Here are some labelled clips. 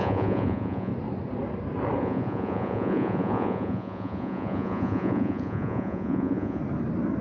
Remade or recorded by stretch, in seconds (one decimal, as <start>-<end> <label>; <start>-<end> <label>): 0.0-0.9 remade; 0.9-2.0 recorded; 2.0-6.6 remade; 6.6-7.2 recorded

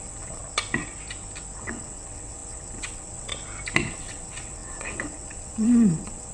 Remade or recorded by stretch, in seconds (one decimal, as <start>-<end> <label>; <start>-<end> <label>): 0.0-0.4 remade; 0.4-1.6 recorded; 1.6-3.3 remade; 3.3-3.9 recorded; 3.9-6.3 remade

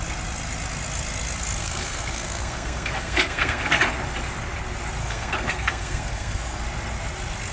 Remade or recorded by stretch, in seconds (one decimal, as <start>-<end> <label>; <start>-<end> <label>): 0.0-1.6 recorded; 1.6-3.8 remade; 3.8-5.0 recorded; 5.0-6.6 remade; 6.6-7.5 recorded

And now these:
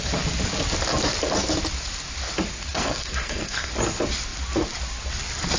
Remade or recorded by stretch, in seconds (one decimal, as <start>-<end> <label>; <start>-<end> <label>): 0.0-2.7 recorded; 2.7-3.7 remade; 3.7-5.6 recorded

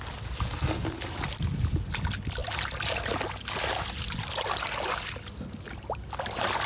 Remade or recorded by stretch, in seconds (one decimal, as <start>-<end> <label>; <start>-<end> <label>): 0.0-6.7 recorded

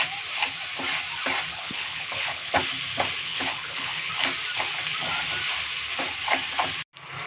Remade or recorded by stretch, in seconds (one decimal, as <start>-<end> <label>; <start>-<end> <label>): 0.0-1.5 recorded; 1.5-2.6 remade; 2.6-3.2 recorded; 3.2-4.1 remade; 4.1-7.3 recorded

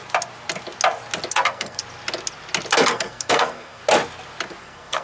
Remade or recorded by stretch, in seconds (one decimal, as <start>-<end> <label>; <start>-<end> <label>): 0.0-1.3 recorded; 1.3-1.8 remade; 1.8-2.7 recorded; 2.7-3.8 remade; 3.8-4.6 recorded; 4.6-5.0 remade